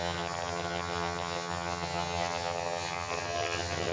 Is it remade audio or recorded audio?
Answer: remade